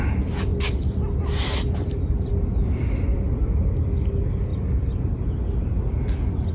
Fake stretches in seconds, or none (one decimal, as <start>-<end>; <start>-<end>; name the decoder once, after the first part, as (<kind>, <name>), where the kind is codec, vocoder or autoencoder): none